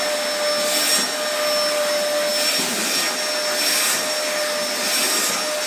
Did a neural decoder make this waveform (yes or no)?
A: no